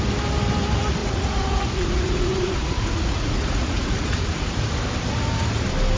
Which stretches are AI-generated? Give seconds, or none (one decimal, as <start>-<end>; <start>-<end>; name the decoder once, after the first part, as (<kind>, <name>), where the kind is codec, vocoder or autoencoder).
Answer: 1.0-4.6 (vocoder, Vocos)